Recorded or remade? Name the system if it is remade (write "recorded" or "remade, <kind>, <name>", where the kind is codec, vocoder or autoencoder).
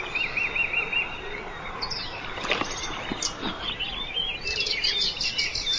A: recorded